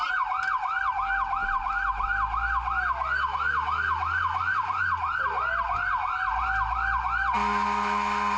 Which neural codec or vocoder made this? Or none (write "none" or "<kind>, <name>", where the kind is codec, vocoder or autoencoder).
none